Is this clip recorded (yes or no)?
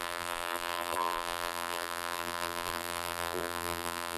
no